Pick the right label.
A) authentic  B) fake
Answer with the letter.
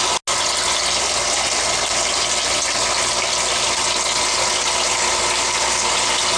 A